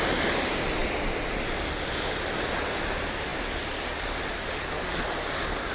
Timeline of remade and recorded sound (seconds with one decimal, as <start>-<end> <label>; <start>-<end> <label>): 0.0-5.7 recorded